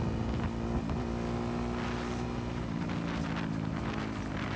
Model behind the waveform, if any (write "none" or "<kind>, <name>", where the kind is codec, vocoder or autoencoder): none